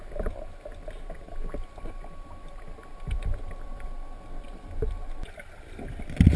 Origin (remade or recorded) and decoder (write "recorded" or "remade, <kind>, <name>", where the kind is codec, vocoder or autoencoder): recorded